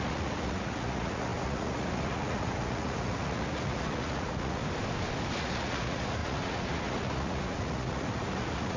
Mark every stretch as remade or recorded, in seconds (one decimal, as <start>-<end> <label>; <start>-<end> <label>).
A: 0.0-4.6 remade; 4.6-5.4 recorded; 5.4-8.8 remade